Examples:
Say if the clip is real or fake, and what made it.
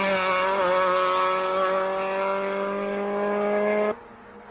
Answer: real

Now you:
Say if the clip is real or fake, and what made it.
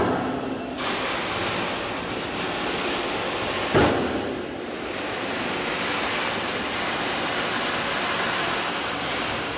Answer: real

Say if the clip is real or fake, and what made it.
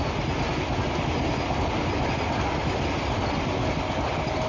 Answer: real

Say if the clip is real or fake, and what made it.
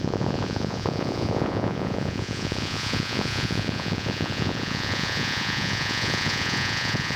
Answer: fake, vocoder, Vocos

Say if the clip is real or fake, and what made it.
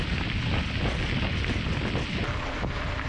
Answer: real